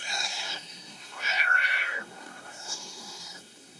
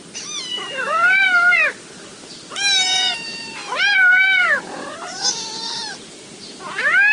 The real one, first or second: second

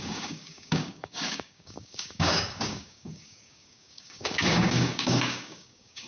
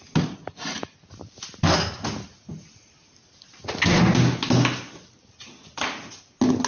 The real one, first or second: second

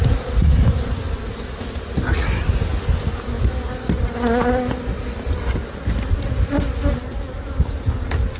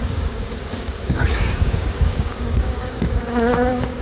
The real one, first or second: first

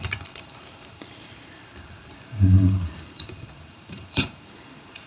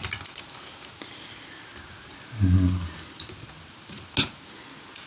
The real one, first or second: second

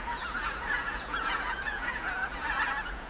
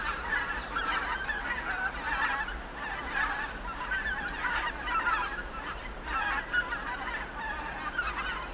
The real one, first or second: second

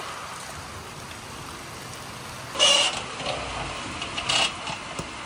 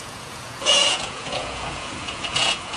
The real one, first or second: first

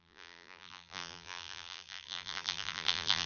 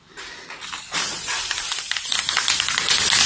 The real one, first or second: second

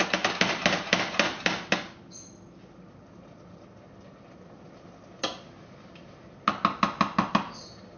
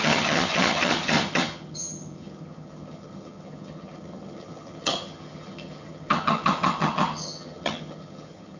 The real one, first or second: first